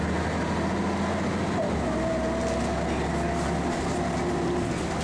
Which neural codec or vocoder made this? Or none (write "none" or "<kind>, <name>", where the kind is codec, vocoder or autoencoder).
none